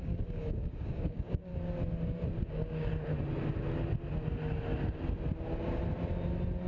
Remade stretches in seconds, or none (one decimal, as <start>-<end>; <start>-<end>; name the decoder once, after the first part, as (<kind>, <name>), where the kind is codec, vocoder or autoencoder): 0.0-1.5 (codec, DAC); 2.5-2.9